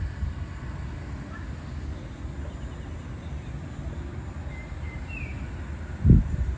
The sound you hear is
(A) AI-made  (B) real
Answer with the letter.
B